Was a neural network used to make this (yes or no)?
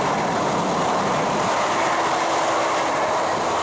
no